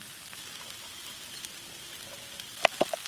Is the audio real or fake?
real